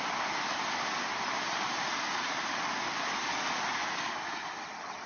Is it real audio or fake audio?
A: real